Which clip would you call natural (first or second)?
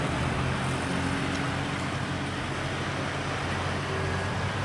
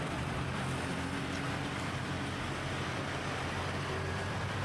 first